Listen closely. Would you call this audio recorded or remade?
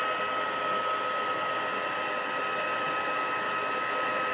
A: recorded